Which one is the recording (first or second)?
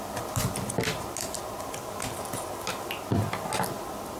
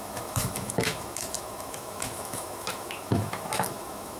first